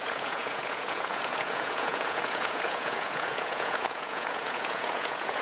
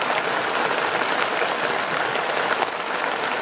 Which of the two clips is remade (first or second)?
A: first